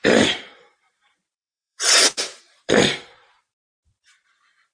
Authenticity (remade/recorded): remade